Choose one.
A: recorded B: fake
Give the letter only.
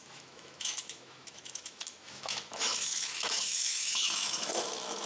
B